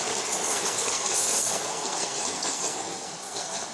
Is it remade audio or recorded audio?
remade